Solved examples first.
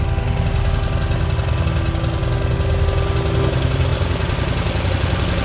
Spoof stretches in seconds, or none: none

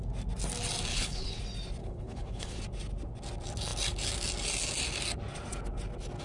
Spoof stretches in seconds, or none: 0.9-1.4 (codec, HILCodec); 1.8-2.6

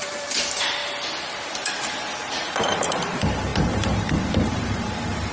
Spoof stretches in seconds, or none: 0.0-0.8 (vocoder, BigVGAN v2); 2.4-5.3